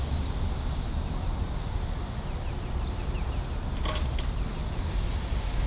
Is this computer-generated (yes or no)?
no